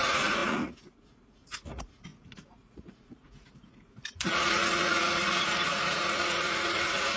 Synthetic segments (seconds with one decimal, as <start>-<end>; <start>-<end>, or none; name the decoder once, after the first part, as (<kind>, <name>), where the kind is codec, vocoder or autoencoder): 0.0-7.2 (vocoder, Vocos)